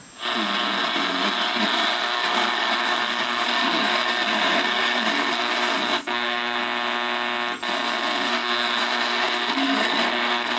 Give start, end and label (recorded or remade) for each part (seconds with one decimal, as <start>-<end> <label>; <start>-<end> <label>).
0.0-1.6 recorded; 1.6-6.6 remade; 6.6-8.3 recorded; 8.3-10.6 remade